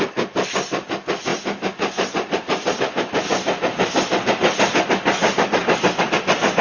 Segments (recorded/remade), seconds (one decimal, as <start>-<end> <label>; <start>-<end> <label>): 0.0-1.3 recorded; 1.3-2.8 remade; 2.8-6.6 recorded